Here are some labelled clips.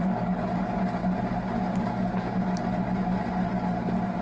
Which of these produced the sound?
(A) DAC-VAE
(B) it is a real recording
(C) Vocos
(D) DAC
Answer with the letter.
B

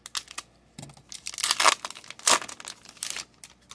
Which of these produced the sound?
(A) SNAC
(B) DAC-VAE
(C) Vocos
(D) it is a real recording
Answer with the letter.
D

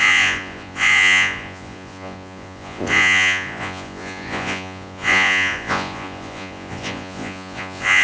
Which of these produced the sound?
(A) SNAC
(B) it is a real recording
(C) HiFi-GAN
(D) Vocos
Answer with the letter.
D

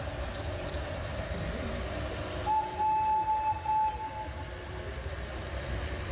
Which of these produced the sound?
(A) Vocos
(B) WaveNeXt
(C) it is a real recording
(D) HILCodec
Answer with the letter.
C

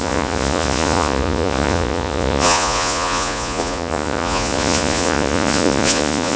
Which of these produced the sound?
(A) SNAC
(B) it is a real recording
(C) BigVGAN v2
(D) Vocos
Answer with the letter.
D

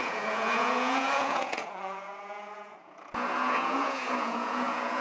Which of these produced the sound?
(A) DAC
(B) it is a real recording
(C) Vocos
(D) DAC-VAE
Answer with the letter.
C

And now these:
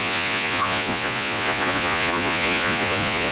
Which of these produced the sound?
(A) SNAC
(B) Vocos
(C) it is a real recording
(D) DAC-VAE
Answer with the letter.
B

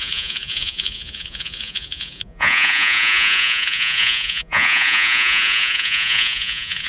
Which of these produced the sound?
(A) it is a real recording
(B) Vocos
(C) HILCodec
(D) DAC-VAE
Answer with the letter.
B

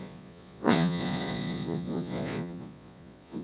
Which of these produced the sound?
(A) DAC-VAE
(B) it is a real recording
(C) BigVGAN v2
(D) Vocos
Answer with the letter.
D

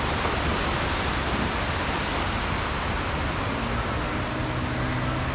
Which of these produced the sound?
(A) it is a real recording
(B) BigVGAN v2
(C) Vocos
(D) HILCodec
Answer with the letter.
A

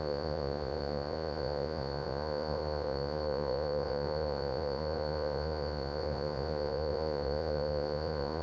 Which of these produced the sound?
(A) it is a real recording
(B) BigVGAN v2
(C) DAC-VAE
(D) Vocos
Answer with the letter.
D